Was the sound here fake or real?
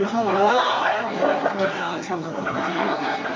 fake